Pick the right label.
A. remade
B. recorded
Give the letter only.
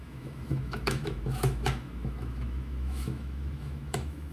A